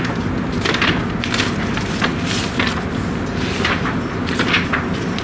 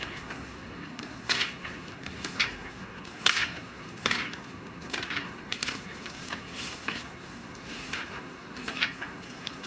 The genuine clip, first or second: first